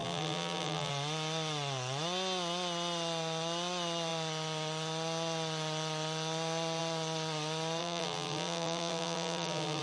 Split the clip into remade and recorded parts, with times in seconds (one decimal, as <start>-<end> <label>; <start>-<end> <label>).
0.0-0.9 remade; 0.9-7.8 recorded; 7.8-9.8 remade